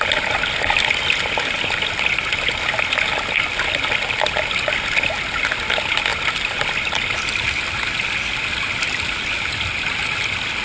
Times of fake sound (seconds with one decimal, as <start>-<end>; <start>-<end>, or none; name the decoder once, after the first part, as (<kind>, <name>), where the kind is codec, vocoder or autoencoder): none